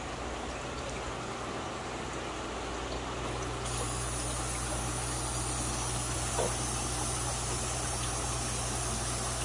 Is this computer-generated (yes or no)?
no